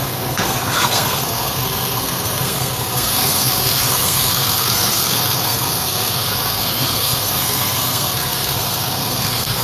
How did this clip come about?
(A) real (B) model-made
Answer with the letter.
B